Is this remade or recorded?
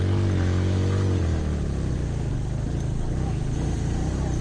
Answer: recorded